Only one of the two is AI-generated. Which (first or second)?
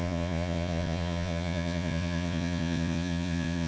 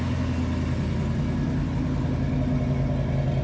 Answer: first